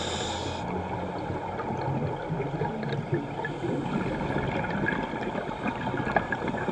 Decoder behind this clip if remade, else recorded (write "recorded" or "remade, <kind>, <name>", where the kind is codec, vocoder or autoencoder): recorded